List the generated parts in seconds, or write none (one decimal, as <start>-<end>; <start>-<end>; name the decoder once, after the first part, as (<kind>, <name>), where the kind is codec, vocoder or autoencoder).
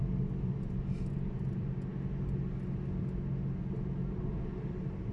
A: none